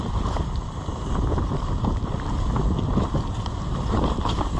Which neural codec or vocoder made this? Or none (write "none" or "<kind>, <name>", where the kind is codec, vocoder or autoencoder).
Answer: vocoder, BigVGAN v2